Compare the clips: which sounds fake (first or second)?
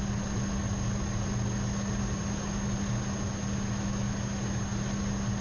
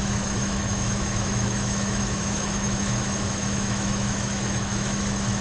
second